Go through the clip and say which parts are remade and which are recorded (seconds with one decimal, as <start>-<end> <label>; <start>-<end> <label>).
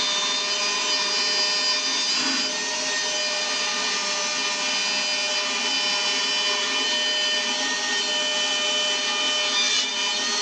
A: 0.0-10.4 recorded